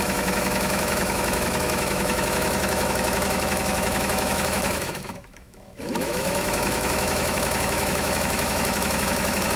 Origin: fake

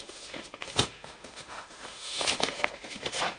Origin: fake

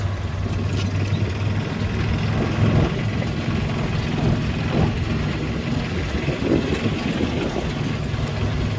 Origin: real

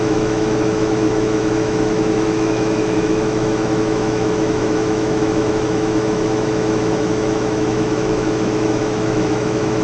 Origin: fake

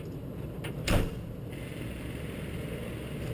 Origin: real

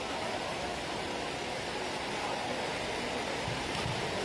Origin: real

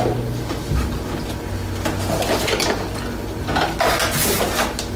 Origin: real